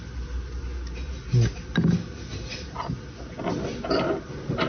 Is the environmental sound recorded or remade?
recorded